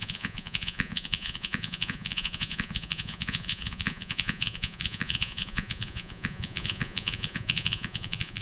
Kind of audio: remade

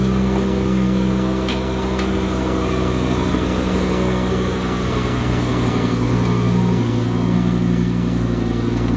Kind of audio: remade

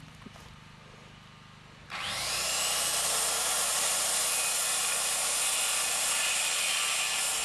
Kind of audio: recorded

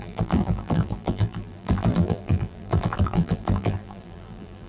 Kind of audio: remade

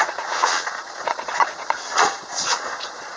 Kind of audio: remade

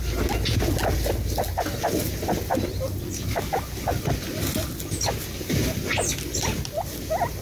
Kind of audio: recorded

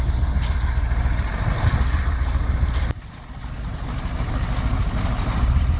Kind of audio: recorded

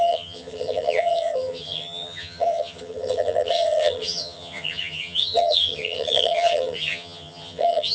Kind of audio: remade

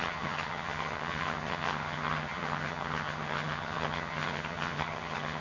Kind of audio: remade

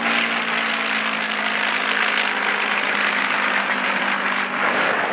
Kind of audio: recorded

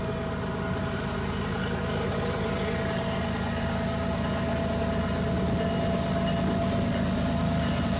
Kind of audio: recorded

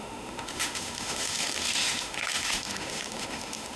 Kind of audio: remade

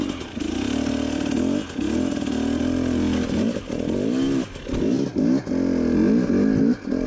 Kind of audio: recorded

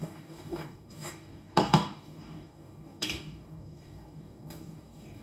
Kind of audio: remade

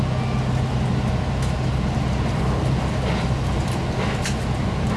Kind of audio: recorded